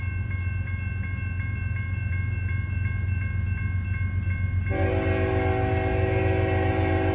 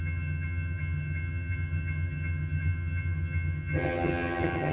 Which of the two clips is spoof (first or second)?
second